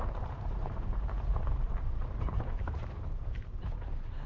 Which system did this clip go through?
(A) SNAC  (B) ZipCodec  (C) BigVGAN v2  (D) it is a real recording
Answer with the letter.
C